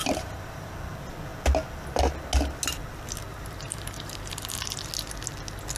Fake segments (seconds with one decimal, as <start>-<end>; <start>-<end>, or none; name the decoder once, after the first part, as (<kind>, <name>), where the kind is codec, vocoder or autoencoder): 0.0-0.7 (vocoder, BigVGAN v2); 3.3-4.9